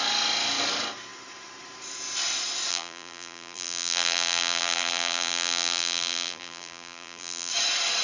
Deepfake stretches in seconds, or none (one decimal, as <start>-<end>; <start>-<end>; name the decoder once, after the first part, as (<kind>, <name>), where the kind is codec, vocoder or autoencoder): 2.7-7.5 (vocoder, BigVGAN v2)